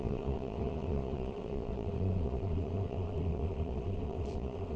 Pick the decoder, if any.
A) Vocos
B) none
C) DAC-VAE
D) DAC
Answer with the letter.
A